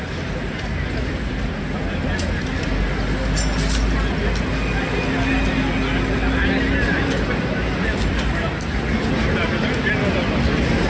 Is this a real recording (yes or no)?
yes